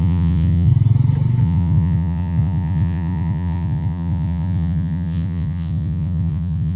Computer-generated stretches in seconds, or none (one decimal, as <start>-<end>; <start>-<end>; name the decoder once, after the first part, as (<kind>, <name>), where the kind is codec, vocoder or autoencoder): 0.0-0.7 (vocoder, Vocos); 1.4-6.8